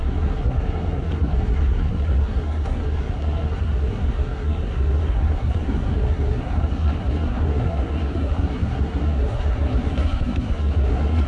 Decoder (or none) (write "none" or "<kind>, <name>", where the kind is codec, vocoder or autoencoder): codec, SNAC